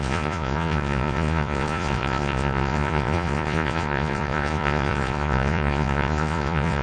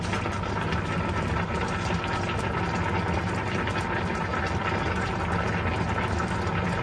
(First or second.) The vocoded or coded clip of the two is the first